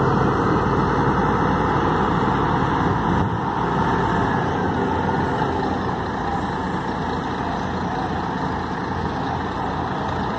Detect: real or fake real